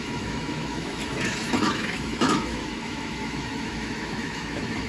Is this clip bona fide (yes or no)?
no